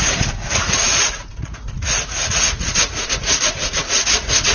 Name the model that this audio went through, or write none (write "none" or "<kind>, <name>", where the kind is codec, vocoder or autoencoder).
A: vocoder, Vocos